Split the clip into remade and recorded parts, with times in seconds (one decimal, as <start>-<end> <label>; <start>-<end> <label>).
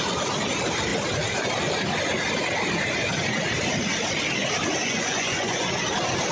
0.0-4.8 recorded; 4.8-5.7 remade; 5.7-6.3 recorded